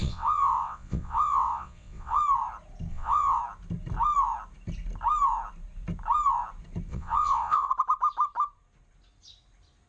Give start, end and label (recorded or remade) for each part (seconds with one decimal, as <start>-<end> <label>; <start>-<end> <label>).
0.0-2.2 remade; 2.2-2.9 recorded; 2.9-3.4 remade; 3.4-6.9 recorded; 6.9-7.7 remade; 7.7-9.9 recorded